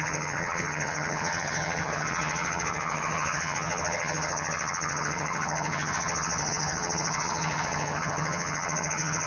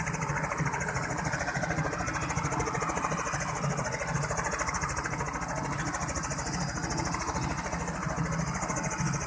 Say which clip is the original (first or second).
second